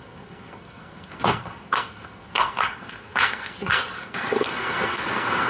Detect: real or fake fake